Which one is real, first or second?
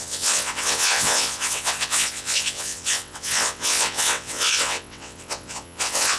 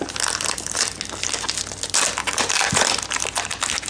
second